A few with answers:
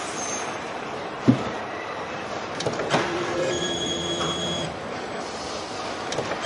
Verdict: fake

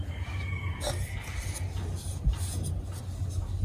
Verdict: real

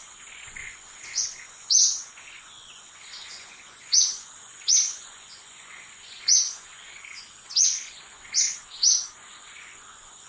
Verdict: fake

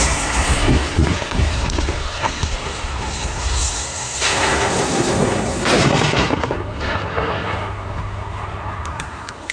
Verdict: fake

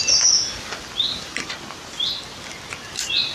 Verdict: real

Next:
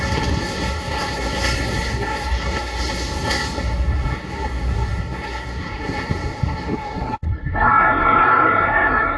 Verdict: fake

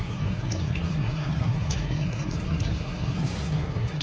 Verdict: fake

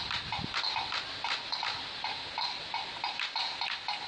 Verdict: real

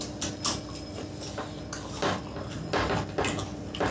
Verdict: real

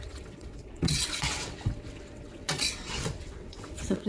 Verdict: fake